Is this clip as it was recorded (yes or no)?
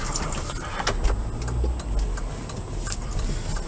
yes